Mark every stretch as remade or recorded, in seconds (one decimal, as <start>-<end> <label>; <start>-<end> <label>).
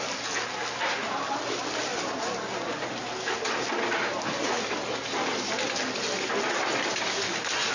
0.0-7.7 recorded